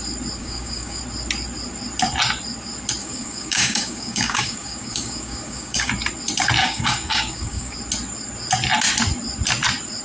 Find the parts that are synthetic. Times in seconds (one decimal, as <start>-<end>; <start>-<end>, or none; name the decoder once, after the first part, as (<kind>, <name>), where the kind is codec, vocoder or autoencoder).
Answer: 0.4-1.0 (codec, DAC); 3.0-5.9; 6.6-7.7